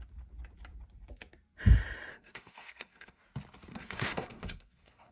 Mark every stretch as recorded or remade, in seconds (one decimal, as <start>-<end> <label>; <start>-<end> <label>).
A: 0.0-2.1 recorded; 2.1-3.2 remade; 3.2-3.7 recorded; 3.7-5.1 remade